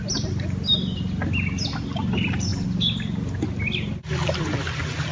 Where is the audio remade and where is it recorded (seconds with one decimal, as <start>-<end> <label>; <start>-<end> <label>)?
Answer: 0.0-5.1 recorded